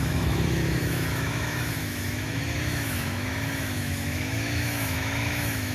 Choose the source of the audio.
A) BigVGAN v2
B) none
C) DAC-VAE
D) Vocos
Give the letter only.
C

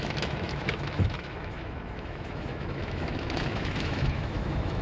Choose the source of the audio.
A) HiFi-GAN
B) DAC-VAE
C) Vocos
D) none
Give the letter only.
B